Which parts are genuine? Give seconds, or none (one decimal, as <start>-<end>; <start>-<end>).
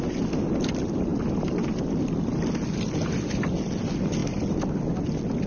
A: 0.0-5.5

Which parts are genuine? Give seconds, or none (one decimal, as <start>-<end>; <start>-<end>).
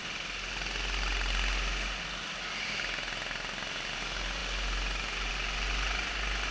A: 0.0-6.5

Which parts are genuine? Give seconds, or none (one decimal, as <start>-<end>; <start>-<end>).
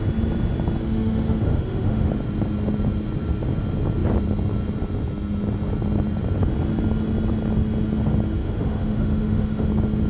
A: 0.0-0.8; 2.1-8.4; 9.7-10.1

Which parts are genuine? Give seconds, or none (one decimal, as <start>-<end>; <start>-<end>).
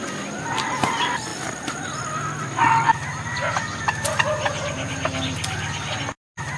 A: 0.0-6.6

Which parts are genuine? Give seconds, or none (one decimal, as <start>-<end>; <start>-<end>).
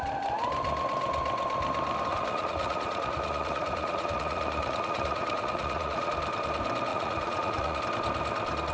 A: 0.0-2.1; 6.1-6.9; 7.8-8.7